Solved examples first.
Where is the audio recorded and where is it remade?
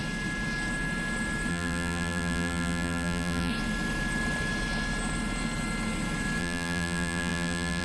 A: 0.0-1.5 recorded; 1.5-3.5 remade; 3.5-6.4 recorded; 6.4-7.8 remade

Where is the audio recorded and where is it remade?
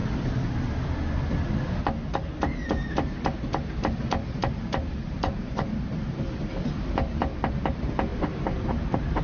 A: 0.0-4.4 recorded; 4.4-6.5 remade; 6.5-8.1 recorded; 8.1-9.2 remade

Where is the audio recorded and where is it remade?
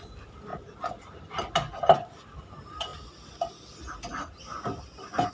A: 0.0-5.3 recorded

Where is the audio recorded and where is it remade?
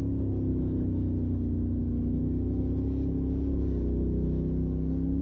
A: 0.0-5.2 recorded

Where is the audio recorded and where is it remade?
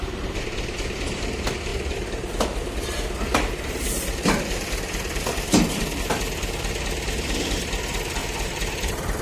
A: 0.0-1.7 recorded; 1.7-6.0 remade; 6.0-8.2 recorded; 8.2-9.2 remade